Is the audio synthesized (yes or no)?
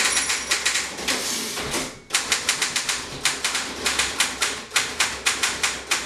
yes